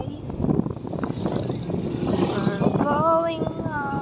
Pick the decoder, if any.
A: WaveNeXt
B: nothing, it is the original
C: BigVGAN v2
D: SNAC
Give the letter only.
B